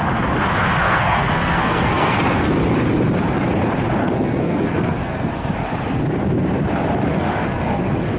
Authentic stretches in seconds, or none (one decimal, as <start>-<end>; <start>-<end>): 0.0-0.8; 2.5-4.0; 5.5-7.1